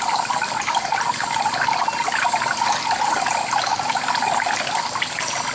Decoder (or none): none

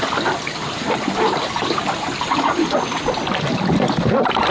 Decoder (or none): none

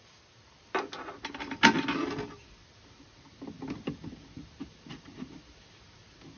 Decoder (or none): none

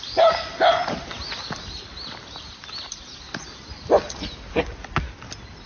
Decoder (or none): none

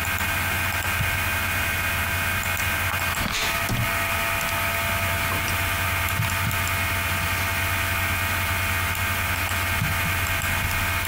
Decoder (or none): none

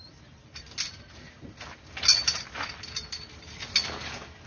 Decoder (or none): none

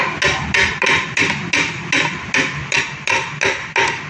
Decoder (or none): none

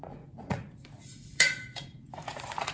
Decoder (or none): vocoder, Vocos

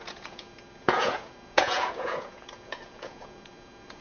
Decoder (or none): vocoder, Vocos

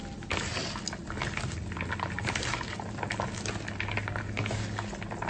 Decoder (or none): none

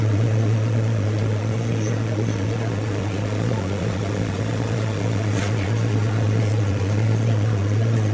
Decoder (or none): vocoder, Vocos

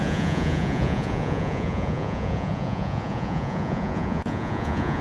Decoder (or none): vocoder, Vocos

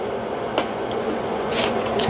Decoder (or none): vocoder, Vocos